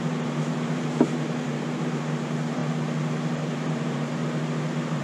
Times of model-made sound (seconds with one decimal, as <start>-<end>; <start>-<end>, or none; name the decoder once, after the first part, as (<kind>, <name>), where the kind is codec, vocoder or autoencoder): 0.0-2.6 (vocoder, BigVGAN v2); 3.4-4.2